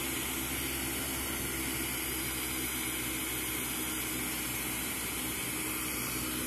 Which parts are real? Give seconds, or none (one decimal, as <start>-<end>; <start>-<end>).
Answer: 0.0-6.5